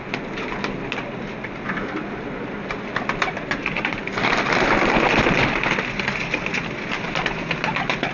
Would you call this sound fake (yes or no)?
no